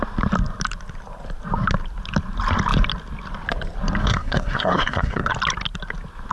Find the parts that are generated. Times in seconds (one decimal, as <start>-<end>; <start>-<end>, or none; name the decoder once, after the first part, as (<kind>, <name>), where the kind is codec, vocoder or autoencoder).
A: 4.0-5.3 (codec, SNAC)